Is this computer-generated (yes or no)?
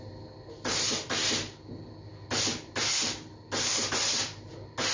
no